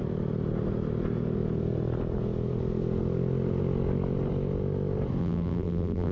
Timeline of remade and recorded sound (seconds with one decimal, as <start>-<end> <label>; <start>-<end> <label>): 0.0-5.2 recorded; 5.2-6.1 remade